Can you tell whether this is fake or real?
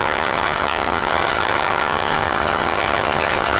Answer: fake